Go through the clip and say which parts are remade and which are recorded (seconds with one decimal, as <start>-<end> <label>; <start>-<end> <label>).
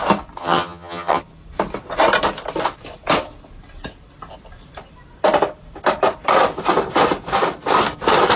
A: 0.0-0.4 recorded; 0.4-1.2 remade; 1.2-8.4 recorded